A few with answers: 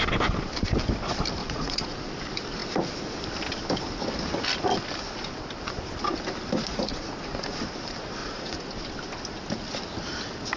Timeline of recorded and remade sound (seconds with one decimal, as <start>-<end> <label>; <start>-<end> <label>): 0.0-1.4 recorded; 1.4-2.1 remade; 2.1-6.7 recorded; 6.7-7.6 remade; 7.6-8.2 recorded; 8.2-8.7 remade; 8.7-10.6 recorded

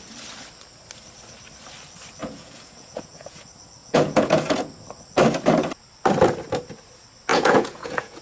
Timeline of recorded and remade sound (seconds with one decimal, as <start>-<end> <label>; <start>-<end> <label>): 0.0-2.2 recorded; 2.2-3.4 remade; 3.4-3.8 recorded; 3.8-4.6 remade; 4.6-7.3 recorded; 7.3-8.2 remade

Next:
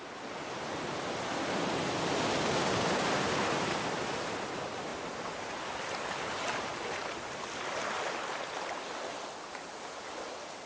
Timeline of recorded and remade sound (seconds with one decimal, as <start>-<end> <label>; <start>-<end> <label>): 0.0-10.7 recorded